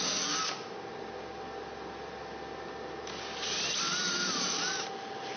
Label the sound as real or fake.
real